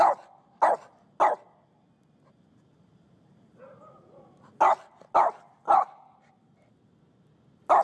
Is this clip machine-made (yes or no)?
no